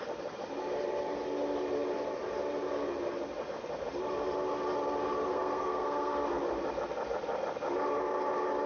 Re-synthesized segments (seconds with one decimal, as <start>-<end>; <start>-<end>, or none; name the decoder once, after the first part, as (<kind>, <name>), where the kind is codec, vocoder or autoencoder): 5.3-6.3 (codec, SNAC)